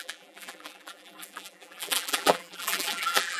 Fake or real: fake